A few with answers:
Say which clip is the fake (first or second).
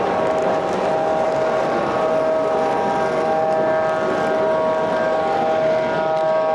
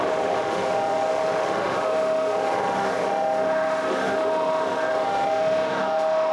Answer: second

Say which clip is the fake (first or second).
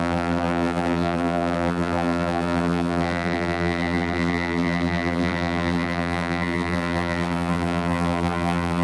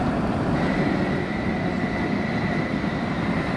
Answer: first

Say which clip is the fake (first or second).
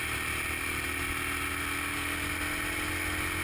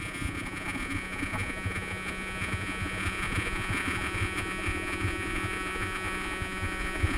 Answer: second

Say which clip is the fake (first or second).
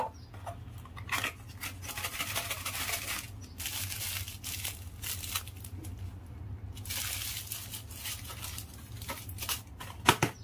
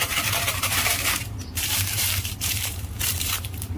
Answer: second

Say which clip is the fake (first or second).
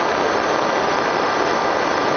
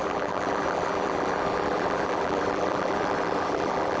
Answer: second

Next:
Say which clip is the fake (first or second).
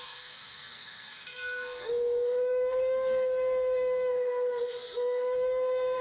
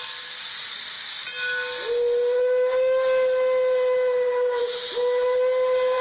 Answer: first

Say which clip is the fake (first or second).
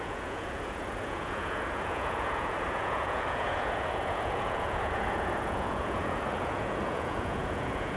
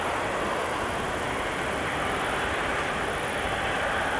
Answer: first